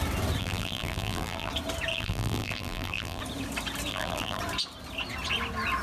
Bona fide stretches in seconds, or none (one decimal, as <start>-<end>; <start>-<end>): 0.0-0.4; 1.5-1.9; 3.2-3.9; 4.4-5.8